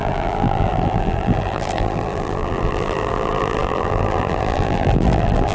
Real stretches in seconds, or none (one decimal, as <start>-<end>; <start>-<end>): none